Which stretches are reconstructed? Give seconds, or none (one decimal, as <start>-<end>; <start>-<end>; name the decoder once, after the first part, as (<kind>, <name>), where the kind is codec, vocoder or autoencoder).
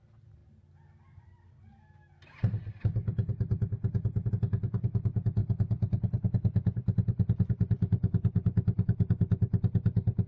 none